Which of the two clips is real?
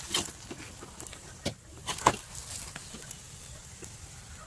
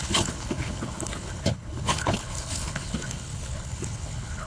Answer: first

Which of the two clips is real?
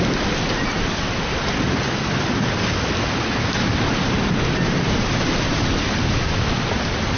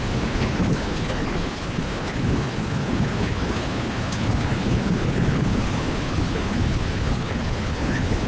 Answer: first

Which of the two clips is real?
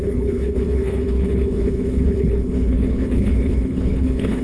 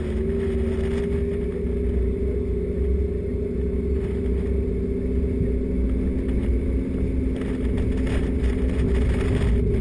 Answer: second